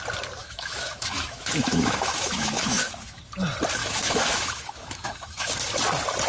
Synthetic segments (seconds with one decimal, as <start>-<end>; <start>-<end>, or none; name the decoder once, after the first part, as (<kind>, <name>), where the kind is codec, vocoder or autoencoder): 0.4-3.2 (autoencoder, DAC-VAE); 3.8-5.5